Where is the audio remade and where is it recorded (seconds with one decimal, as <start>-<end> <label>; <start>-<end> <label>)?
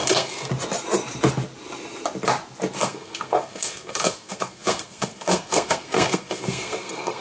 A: 0.0-0.5 remade; 0.5-2.8 recorded; 2.8-7.2 remade